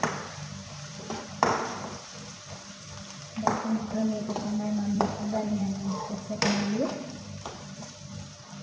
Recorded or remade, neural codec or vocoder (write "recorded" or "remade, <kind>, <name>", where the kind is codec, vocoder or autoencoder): remade, vocoder, BigVGAN v2